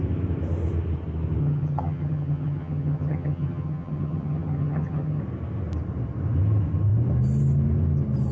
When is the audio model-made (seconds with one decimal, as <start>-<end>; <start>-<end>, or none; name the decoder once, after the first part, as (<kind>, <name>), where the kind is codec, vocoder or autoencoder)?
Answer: 1.4-5.2 (vocoder, HiFi-GAN)